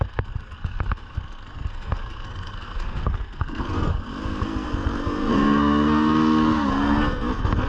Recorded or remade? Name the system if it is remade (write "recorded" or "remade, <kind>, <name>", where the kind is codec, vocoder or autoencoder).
remade, codec, SNAC